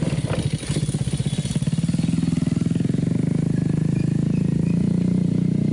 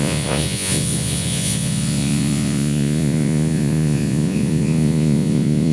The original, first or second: first